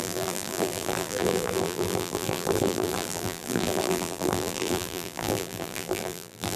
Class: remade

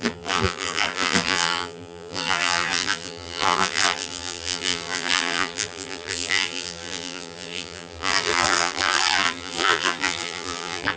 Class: remade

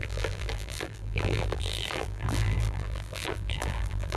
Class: remade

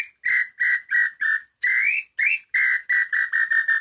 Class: recorded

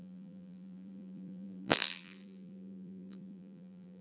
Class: remade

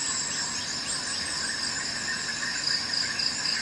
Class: recorded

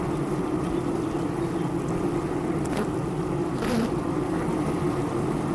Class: recorded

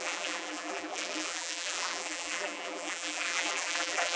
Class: remade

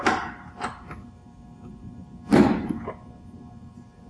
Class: recorded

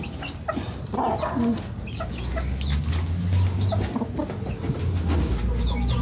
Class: recorded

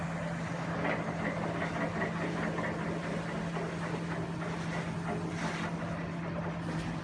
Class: recorded